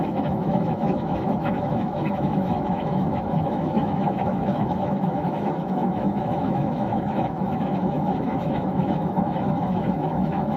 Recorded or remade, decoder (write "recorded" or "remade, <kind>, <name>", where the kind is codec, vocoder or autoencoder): remade, autoencoder, DAC-VAE